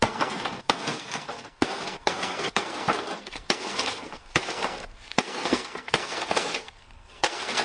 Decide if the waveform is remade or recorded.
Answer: remade